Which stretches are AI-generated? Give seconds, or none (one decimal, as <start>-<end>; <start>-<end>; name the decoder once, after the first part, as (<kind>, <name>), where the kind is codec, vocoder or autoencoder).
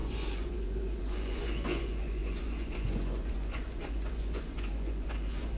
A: 0.0-5.6 (vocoder, Vocos)